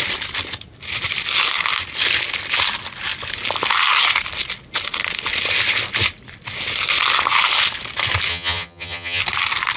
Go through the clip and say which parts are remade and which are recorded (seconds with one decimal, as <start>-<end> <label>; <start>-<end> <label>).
0.0-8.3 recorded; 8.3-9.2 remade; 9.2-9.8 recorded